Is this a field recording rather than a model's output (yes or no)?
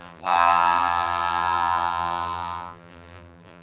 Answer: no